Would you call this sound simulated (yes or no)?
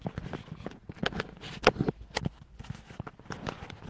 no